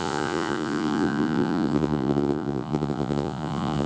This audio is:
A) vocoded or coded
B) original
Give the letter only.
A